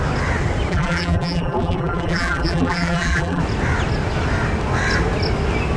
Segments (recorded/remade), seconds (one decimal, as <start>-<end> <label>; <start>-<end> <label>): 0.0-0.7 recorded; 0.7-3.4 remade; 3.4-5.8 recorded